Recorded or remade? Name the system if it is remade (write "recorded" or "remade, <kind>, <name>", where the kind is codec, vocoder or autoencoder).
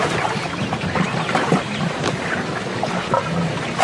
remade, vocoder, BigVGAN v2